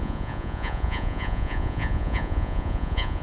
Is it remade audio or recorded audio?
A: remade